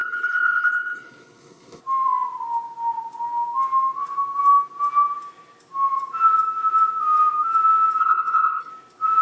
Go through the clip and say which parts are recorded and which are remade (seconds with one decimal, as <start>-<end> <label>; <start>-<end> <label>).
0.0-1.8 remade; 1.8-8.0 recorded; 8.0-8.7 remade; 8.7-9.2 recorded